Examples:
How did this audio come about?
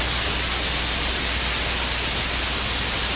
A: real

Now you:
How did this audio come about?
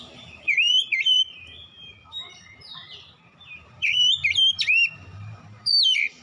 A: fake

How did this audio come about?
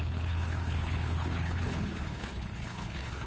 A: fake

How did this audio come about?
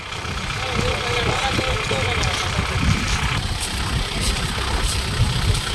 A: real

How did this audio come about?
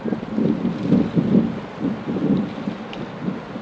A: real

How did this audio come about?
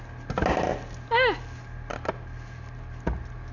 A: real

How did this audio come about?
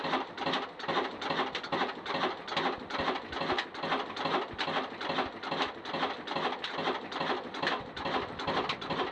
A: real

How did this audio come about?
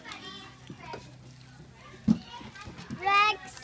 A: real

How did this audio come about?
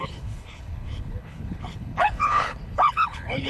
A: fake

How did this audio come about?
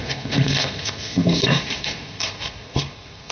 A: fake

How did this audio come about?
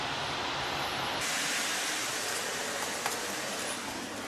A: real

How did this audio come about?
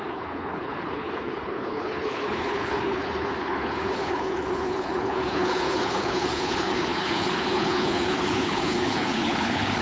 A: fake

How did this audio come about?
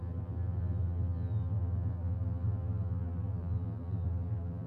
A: fake